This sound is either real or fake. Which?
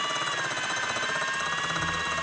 real